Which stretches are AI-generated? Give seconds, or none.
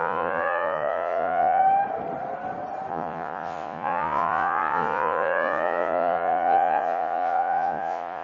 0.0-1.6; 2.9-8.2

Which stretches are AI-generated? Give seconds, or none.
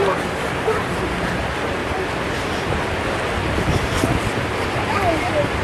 none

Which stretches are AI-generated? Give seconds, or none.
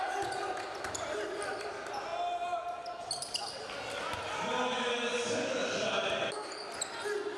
none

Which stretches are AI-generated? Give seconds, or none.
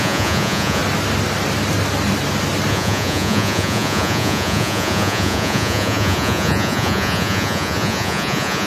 0.0-0.8; 2.7-8.7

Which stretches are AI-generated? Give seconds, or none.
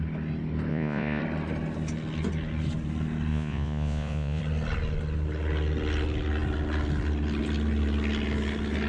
0.7-1.2; 3.3-4.4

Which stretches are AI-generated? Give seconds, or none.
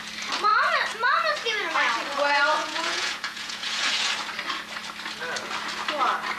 2.6-4.1